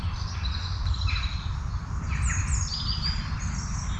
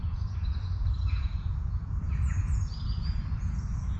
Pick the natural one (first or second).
first